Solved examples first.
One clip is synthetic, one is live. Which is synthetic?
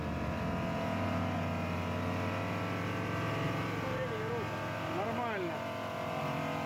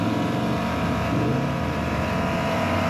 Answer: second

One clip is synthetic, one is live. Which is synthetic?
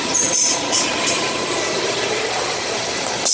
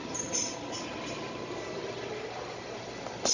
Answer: first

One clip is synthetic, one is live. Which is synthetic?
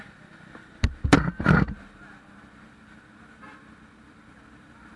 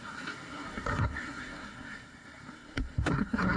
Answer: second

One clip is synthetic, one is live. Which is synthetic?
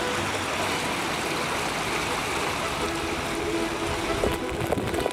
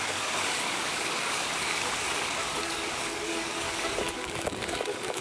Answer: second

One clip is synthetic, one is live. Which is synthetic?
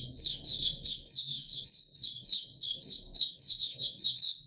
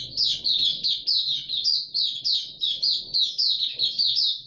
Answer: first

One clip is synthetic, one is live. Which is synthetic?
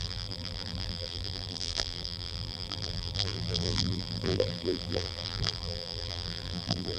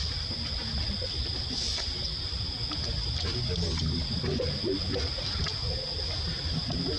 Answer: first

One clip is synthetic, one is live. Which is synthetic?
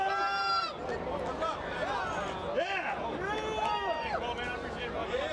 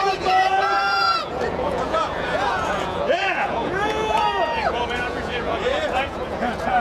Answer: second